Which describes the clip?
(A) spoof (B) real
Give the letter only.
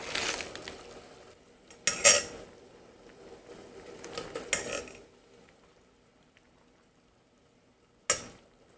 B